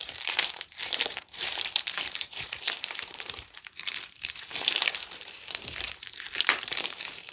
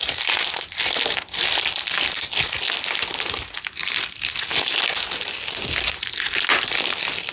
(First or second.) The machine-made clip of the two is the first